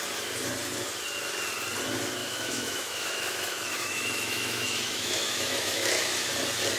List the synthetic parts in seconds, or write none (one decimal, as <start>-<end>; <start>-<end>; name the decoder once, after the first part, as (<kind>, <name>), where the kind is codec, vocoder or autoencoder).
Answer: 2.2-6.3 (autoencoder, DAC-VAE)